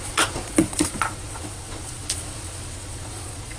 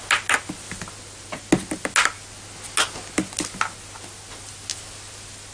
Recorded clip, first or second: second